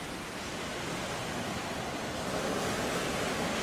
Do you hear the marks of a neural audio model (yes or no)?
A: no